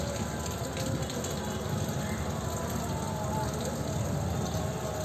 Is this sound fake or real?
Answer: real